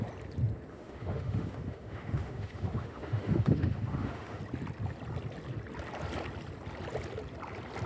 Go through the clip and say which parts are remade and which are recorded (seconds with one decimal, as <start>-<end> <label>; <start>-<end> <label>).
0.0-0.7 recorded; 0.7-4.4 remade; 4.4-7.9 recorded